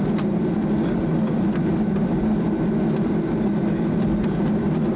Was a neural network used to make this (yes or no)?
no